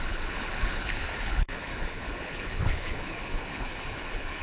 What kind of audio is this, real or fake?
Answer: fake